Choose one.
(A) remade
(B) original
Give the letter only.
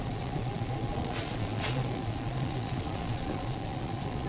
A